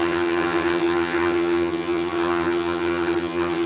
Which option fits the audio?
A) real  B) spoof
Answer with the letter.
B